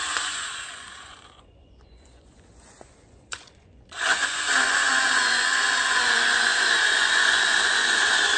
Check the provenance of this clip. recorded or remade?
remade